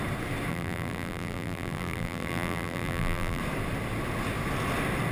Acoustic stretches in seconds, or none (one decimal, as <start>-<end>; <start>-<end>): 0.0-0.5; 3.4-5.1